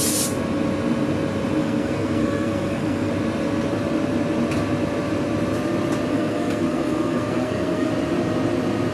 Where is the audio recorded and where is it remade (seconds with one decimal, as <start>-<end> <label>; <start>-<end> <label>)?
0.0-1.6 recorded; 1.6-3.1 remade; 3.1-6.1 recorded; 6.1-7.9 remade; 7.9-8.9 recorded